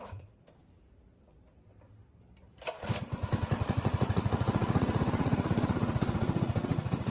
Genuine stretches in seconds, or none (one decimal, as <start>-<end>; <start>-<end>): 0.6-3.7